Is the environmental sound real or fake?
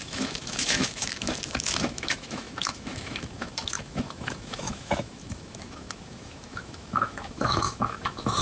fake